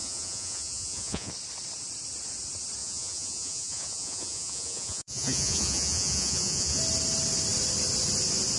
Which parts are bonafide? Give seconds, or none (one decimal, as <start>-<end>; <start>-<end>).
1.3-2.8; 6.8-8.6

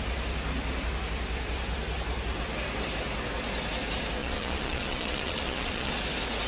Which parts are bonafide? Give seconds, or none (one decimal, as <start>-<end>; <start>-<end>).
0.0-4.2; 5.9-6.5

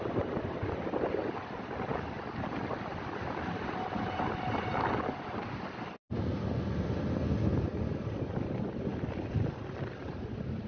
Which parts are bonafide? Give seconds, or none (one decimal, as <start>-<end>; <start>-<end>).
0.0-10.7

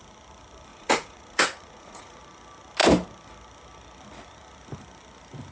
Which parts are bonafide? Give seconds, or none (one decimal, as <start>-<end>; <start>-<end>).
0.0-0.7; 2.2-5.5

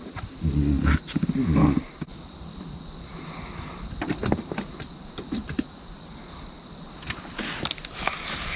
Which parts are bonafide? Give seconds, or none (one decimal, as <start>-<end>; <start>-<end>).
0.0-8.6

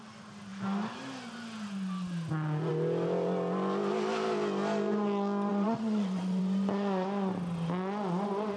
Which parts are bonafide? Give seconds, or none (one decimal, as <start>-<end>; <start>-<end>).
0.0-5.5; 6.4-8.6

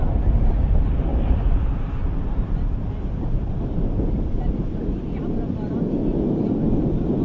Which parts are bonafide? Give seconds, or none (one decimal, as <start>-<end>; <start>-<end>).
0.0-7.2